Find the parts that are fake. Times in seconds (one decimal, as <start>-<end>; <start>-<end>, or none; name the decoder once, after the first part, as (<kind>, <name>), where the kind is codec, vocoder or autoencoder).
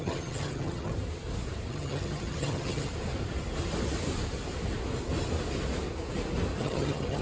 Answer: 0.0-0.9 (vocoder, HiFi-GAN); 1.7-2.9; 6.6-7.2